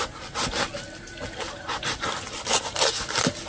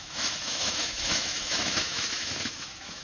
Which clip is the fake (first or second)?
second